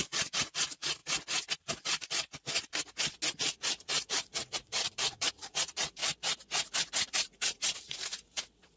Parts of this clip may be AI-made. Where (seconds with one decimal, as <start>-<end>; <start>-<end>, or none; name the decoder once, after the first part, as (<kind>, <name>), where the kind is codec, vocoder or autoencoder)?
0.0-1.0 (vocoder, Vocos); 3.3-6.0; 6.9-8.8